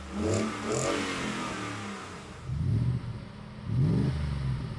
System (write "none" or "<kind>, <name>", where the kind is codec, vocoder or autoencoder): none